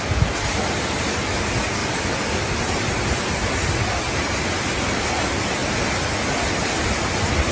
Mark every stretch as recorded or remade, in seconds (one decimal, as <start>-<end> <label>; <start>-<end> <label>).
0.0-7.5 recorded